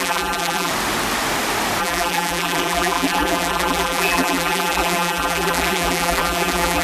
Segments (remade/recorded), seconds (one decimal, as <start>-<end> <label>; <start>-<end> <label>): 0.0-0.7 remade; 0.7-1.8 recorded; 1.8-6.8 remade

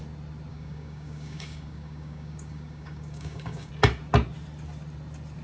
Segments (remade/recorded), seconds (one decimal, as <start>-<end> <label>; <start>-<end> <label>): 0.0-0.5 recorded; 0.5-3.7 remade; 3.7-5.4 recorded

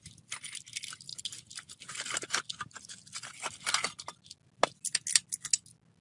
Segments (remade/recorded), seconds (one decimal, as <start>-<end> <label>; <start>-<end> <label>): 0.0-6.0 recorded

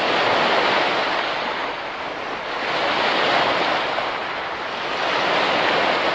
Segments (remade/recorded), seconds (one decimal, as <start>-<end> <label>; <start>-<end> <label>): 0.0-6.1 recorded

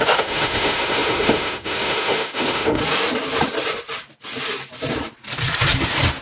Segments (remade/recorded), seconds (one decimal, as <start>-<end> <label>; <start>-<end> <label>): 0.0-2.8 remade; 2.8-6.2 recorded

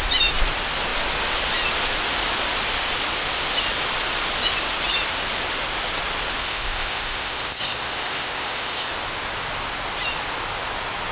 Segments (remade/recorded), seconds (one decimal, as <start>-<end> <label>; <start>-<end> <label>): 0.0-6.4 recorded; 6.4-8.9 remade; 8.9-11.1 recorded

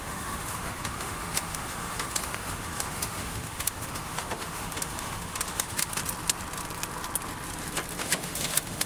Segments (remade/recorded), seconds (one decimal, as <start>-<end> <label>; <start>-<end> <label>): 0.0-6.0 remade; 6.0-8.0 recorded; 8.0-8.9 remade